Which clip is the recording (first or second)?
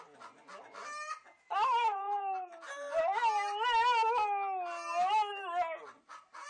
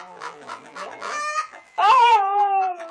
first